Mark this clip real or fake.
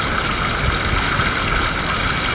real